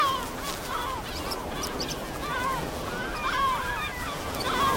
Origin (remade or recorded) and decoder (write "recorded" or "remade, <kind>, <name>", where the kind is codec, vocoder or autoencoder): remade, vocoder, BigVGAN v2